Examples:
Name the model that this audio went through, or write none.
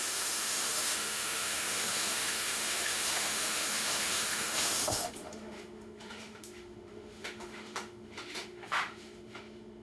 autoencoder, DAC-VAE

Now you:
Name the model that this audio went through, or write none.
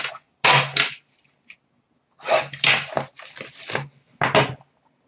none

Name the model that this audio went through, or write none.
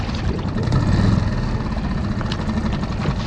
none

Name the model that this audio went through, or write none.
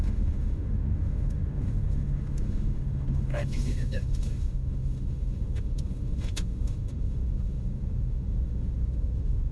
autoencoder, DAC-VAE